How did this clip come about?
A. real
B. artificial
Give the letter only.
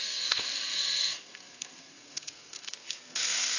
B